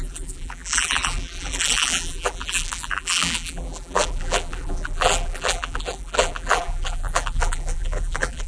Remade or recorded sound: remade